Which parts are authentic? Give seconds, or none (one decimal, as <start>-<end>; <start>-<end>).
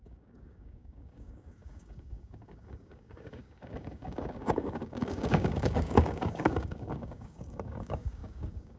none